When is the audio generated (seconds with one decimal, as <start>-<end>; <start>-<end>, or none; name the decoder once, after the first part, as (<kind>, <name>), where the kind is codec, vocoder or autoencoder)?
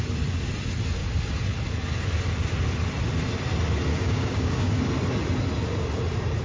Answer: 3.9-4.8 (codec, DAC)